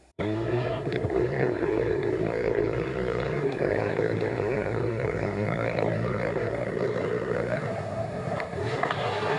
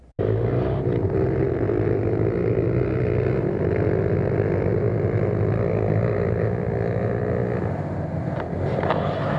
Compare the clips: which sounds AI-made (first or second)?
first